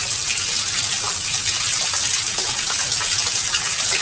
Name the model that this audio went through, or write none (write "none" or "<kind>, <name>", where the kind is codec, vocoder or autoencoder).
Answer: none